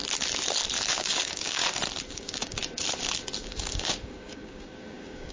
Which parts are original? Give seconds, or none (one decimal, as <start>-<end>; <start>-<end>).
0.0-0.9; 1.6-2.1; 2.6-3.4